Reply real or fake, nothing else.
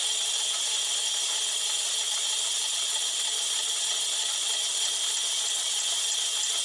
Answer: real